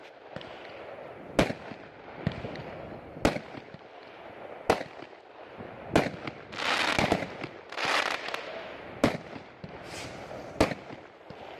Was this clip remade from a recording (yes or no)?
no